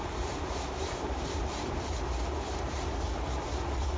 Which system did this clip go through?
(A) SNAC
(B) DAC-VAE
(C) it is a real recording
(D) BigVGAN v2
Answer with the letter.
D